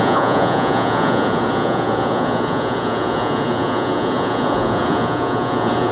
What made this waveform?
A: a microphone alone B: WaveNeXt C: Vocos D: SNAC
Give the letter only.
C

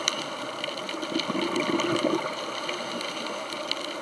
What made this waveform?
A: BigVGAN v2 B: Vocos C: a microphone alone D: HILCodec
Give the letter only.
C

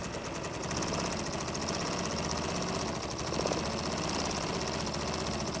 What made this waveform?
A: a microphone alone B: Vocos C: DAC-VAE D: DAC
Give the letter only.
A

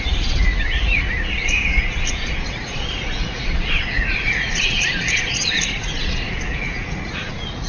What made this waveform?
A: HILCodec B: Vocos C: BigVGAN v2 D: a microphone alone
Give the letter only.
B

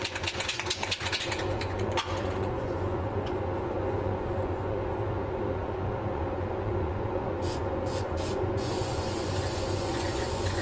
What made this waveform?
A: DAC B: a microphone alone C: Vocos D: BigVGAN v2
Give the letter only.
C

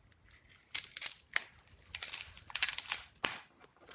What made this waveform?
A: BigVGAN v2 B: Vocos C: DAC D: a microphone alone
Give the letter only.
D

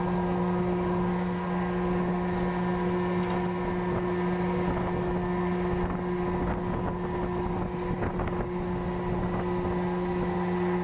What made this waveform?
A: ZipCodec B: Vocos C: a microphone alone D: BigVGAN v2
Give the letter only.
C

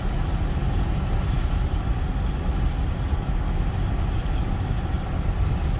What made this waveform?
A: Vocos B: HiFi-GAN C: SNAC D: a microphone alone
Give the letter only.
D